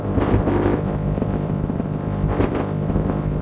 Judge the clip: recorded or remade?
remade